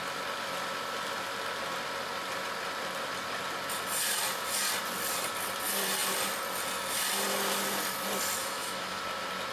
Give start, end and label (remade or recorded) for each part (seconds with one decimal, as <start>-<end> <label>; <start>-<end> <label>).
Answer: 0.0-8.4 recorded; 8.4-9.0 remade; 9.0-9.5 recorded